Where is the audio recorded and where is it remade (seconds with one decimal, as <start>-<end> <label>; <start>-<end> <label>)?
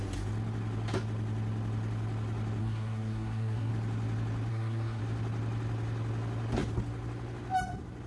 0.0-2.6 recorded; 2.6-3.7 remade; 3.7-4.5 recorded; 4.5-5.0 remade; 5.0-8.1 recorded